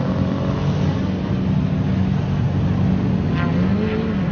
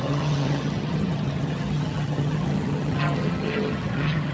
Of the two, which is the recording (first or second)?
first